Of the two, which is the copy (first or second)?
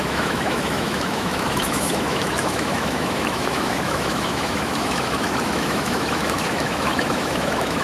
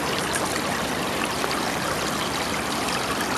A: first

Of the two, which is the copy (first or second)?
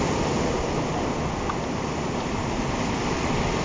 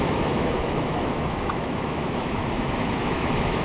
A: second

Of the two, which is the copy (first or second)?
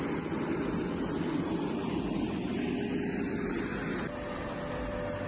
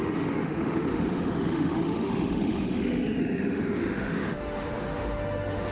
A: second